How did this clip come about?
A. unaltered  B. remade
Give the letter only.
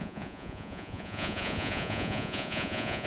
B